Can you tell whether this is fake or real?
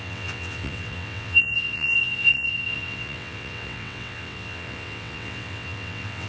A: fake